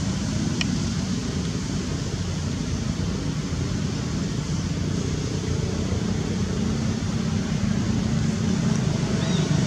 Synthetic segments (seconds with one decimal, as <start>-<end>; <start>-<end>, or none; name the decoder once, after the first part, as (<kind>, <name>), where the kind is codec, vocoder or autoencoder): 0.0-9.7 (vocoder, BigVGAN v2)